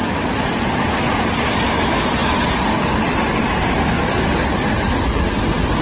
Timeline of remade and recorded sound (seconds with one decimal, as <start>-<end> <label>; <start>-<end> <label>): 0.0-5.8 recorded

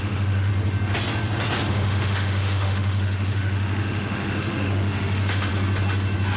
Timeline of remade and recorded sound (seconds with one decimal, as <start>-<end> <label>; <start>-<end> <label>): 0.0-0.5 remade; 0.5-1.7 recorded; 1.7-5.5 remade; 5.5-6.4 recorded

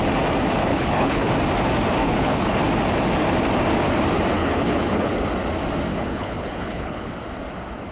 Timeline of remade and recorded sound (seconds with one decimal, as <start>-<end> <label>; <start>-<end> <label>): 0.0-0.7 recorded; 0.7-1.3 remade; 1.3-2.0 recorded; 2.0-2.6 remade; 2.6-4.4 recorded; 4.4-5.1 remade; 5.1-5.9 recorded; 5.9-7.1 remade; 7.1-7.9 recorded

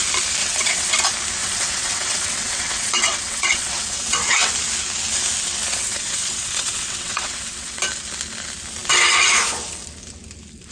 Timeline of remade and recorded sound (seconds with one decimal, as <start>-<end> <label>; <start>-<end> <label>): 0.0-0.4 recorded; 0.4-0.9 remade; 0.9-1.4 recorded; 1.4-4.5 remade; 4.5-5.7 recorded; 5.7-7.8 remade; 7.8-10.7 recorded

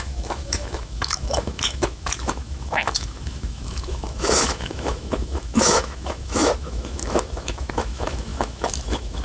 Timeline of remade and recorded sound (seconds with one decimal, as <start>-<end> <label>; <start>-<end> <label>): 0.0-9.2 remade

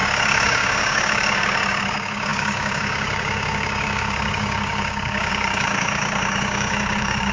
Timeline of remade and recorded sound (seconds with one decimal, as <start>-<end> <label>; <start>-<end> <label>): 0.0-7.3 remade

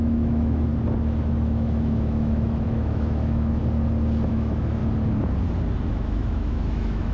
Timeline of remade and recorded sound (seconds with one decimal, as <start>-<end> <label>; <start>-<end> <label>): 0.0-0.7 remade; 0.7-1.2 recorded; 1.2-3.6 remade; 3.6-4.3 recorded; 4.3-4.8 remade; 4.8-5.9 recorded; 5.9-7.1 remade

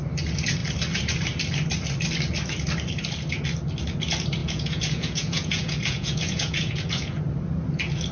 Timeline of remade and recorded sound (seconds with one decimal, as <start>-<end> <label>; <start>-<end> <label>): 0.0-4.4 recorded; 4.4-7.2 remade; 7.2-8.1 recorded